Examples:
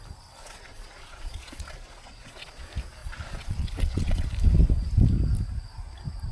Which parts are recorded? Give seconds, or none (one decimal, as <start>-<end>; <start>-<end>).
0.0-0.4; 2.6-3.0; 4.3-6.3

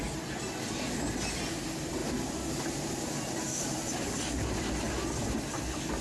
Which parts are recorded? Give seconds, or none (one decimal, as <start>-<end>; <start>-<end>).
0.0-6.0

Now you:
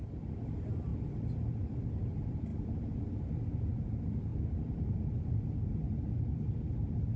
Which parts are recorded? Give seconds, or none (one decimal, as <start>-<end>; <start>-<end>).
0.0-7.2

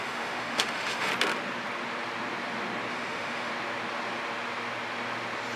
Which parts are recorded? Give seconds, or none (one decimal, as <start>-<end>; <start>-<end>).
1.1-2.9; 3.5-5.6